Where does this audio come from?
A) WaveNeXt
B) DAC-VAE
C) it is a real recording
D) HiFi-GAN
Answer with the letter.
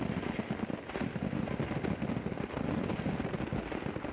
C